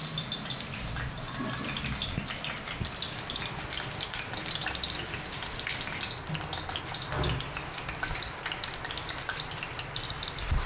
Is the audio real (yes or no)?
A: yes